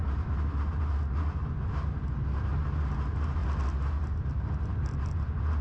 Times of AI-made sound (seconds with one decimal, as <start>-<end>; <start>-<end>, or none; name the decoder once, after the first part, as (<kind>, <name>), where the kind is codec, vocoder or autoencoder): none